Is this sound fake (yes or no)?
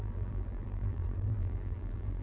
yes